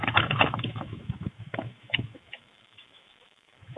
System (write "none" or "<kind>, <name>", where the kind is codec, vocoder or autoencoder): autoencoder, DAC-VAE